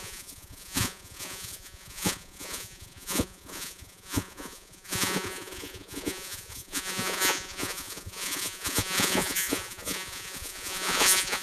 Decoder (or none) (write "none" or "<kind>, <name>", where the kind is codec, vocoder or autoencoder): vocoder, Vocos